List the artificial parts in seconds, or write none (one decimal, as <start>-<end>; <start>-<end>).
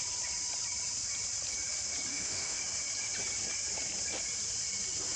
2.1-2.6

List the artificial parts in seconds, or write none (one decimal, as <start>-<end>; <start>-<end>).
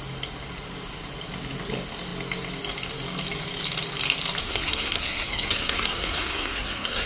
4.4-7.1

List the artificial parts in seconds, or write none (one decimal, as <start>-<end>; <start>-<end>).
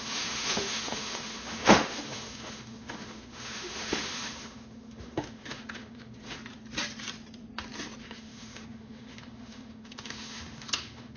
0.0-6.4; 8.0-11.2